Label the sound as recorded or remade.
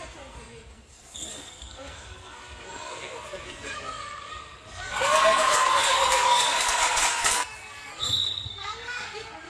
remade